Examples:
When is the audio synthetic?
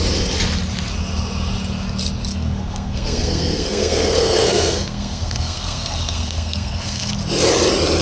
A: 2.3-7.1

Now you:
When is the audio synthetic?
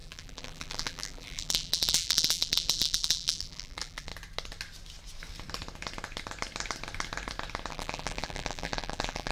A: 0.0-4.1; 7.7-9.3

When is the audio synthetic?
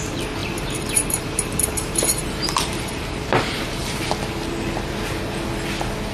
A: 0.4-4.1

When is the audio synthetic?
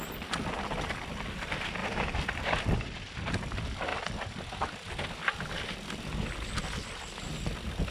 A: none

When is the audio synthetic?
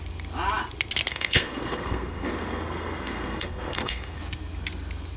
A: 1.1-4.2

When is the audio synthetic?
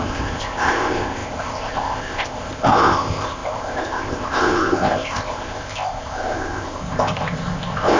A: 0.0-8.0